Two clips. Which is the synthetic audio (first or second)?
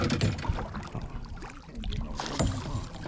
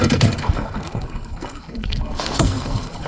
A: second